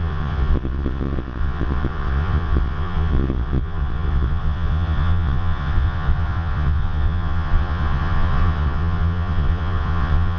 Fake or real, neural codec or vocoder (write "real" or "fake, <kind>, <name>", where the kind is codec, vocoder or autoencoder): fake, vocoder, Vocos